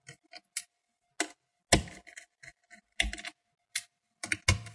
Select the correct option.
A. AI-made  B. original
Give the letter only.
B